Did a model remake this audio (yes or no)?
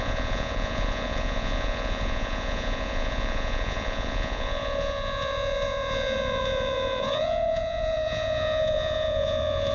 yes